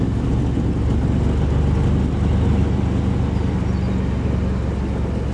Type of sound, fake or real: real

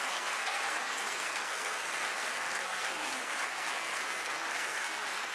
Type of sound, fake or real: fake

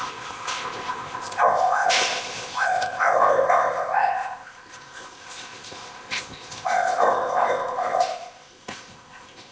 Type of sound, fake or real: fake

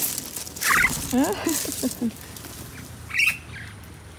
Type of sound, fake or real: real